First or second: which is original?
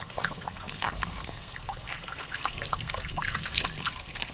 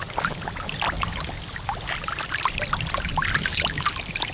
second